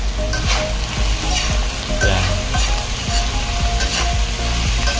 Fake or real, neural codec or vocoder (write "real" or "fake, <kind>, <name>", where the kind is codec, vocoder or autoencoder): real